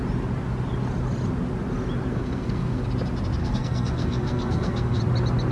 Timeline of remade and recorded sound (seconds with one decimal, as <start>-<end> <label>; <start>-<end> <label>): 0.0-2.1 recorded; 2.1-2.8 remade; 2.8-3.4 recorded; 3.4-5.0 remade; 5.0-5.5 recorded